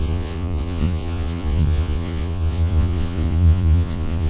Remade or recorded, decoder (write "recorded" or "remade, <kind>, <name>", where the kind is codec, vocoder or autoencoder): remade, vocoder, Vocos